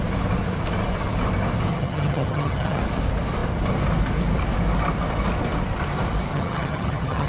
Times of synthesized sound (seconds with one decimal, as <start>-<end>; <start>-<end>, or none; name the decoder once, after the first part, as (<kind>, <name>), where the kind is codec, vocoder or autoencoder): 1.7-2.8 (vocoder, HiFi-GAN); 6.3-7.3